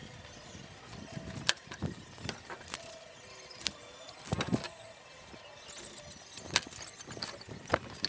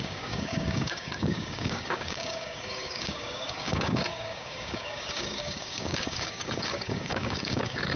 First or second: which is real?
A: first